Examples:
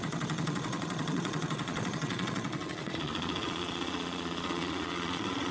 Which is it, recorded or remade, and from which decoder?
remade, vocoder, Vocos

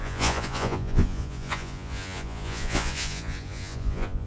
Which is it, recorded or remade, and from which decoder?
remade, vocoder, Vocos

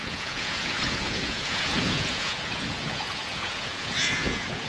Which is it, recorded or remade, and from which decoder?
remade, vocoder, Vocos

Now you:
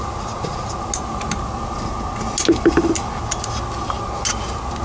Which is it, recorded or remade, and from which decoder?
recorded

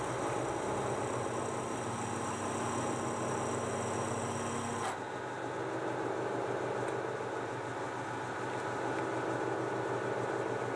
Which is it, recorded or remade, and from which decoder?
recorded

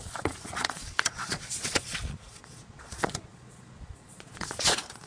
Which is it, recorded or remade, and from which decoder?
remade, vocoder, Vocos